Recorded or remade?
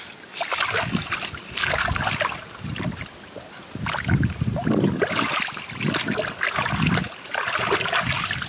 recorded